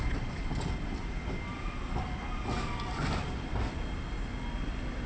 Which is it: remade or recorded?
recorded